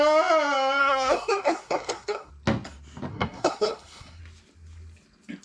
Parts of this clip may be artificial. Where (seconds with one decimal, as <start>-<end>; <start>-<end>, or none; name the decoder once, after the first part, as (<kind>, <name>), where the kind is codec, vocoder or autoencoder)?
0.8-2.3 (codec, SNAC); 3.1-4.2